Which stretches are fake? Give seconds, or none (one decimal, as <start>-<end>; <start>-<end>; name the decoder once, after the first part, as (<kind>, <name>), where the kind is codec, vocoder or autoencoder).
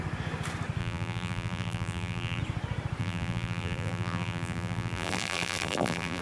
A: 0.8-2.4 (vocoder, BigVGAN v2); 3.0-6.2